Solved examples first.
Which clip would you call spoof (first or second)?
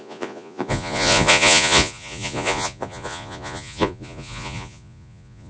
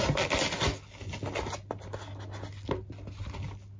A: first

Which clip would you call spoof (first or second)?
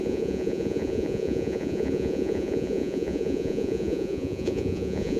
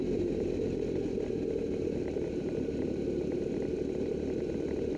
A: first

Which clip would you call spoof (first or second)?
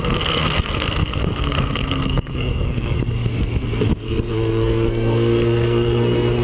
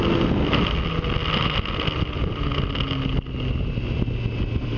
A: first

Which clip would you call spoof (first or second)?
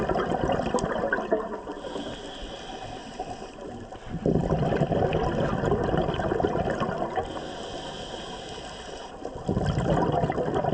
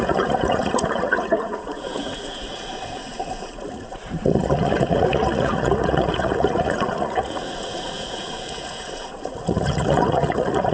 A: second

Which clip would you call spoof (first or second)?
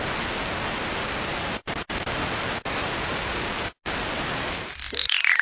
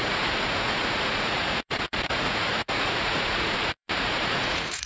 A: second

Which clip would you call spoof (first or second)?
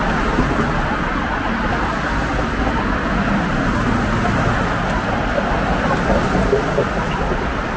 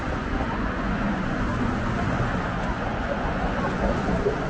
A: second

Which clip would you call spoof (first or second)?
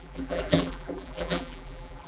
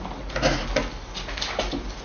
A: first